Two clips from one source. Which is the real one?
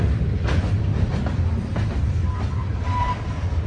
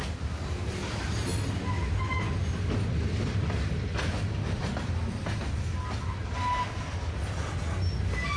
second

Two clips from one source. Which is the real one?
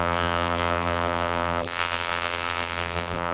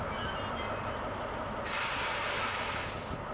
second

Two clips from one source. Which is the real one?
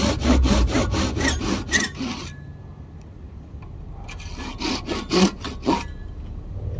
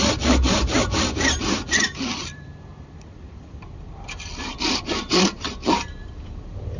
first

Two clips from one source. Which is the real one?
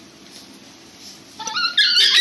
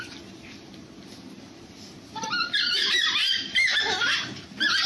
first